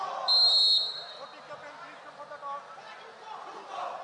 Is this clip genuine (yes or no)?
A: yes